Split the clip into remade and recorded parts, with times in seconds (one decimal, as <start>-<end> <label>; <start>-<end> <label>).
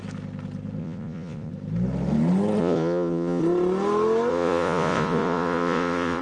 0.0-0.8 recorded; 0.8-1.5 remade; 1.5-2.6 recorded; 2.6-3.4 remade; 3.4-4.3 recorded; 4.3-6.2 remade